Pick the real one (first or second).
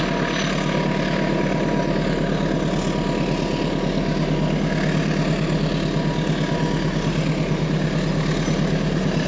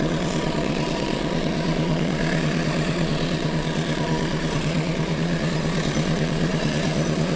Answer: first